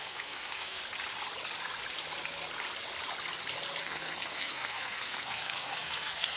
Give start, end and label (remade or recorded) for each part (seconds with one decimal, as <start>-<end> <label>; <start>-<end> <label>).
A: 0.0-0.8 remade; 0.8-3.8 recorded; 3.8-6.4 remade